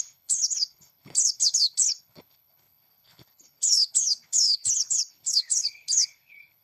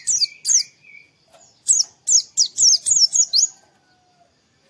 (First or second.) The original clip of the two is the second